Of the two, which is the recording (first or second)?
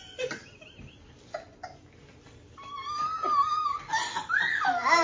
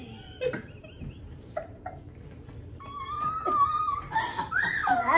first